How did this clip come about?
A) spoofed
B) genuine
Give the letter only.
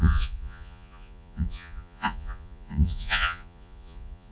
A